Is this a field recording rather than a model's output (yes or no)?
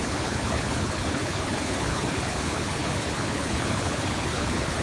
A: no